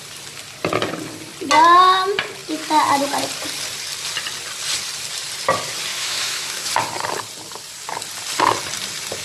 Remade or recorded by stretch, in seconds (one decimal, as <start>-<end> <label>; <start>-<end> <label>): 0.0-5.9 recorded; 5.9-6.7 remade; 6.7-9.2 recorded